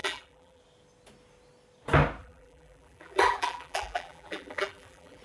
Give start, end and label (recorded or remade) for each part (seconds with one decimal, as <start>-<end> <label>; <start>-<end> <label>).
0.0-0.6 remade; 0.6-2.2 recorded; 2.2-5.2 remade

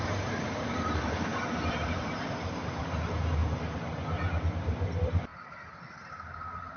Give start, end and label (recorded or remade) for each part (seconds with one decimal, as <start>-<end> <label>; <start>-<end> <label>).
0.0-3.4 remade; 3.4-4.6 recorded; 4.6-5.3 remade; 5.3-6.8 recorded

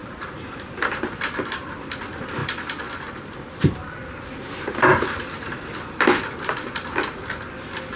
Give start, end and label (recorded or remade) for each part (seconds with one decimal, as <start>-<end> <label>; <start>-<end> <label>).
0.0-8.0 remade

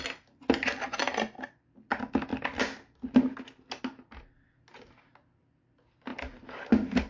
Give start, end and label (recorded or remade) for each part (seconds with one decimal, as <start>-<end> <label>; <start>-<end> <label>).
0.0-7.1 recorded